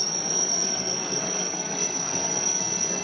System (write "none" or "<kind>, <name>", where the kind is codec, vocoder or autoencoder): codec, SNAC